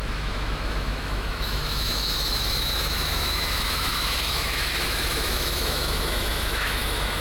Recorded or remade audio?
remade